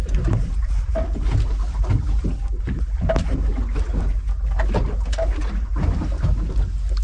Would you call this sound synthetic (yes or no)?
no